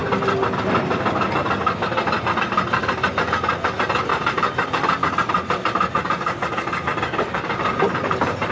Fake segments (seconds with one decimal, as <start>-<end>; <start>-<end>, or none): 4.1-8.5

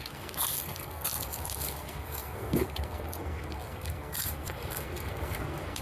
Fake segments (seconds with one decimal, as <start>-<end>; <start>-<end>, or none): 0.0-5.8

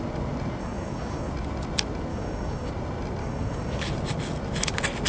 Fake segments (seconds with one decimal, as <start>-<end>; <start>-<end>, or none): 0.6-1.3; 2.1-2.7; 3.2-3.8